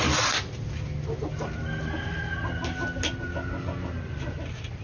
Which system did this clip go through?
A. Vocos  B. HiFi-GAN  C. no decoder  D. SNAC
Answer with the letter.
C